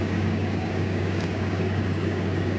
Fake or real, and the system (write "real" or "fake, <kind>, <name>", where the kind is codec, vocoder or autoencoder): fake, codec, DAC